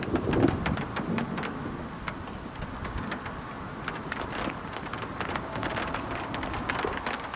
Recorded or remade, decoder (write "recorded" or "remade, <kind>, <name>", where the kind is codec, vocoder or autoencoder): recorded